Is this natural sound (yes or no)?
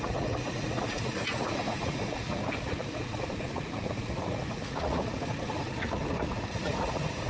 no